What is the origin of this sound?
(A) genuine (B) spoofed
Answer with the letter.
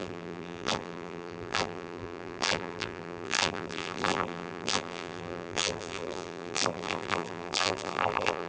B